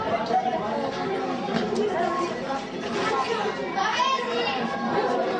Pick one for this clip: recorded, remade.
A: recorded